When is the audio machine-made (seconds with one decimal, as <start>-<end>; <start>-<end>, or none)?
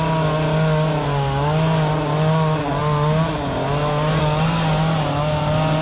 none